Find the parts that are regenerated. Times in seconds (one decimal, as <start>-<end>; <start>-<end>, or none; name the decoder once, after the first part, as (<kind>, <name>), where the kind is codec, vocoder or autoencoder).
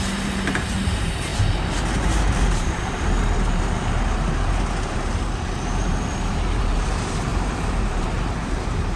0.0-9.0 (vocoder, BigVGAN v2)